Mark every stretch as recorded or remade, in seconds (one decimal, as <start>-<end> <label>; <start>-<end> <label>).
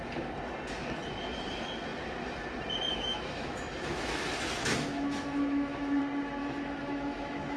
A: 0.0-2.9 recorded; 2.9-6.0 remade; 6.0-6.4 recorded; 6.4-7.6 remade